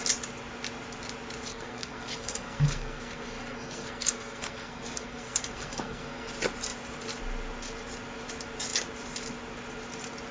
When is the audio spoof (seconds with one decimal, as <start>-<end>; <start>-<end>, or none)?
1.5-6.3